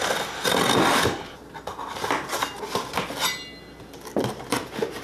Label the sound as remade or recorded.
recorded